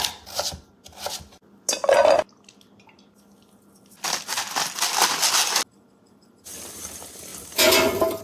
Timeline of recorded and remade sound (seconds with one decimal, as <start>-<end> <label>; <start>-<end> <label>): 0.0-8.2 recorded